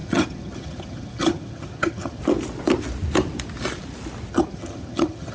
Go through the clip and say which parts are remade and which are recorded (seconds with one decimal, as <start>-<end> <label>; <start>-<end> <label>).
0.0-2.2 remade; 2.2-4.3 recorded; 4.3-5.3 remade